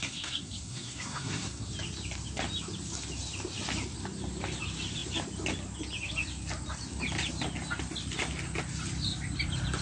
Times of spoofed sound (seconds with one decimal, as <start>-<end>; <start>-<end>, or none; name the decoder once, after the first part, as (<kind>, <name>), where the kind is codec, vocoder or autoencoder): 0.0-1.7 (codec, SNAC)